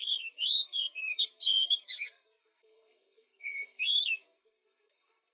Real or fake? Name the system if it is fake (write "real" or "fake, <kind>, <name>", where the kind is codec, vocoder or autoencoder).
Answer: fake, codec, SNAC